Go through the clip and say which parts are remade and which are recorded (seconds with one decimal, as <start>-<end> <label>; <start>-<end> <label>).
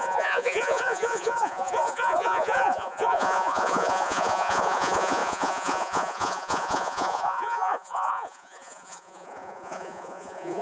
0.0-10.6 remade